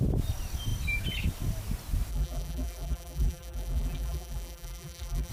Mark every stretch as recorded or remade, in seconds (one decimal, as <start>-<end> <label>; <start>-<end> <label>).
0.0-2.1 recorded; 2.1-5.3 remade